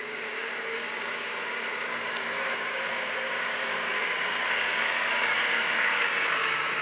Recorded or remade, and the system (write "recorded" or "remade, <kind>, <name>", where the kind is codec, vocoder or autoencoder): remade, codec, DAC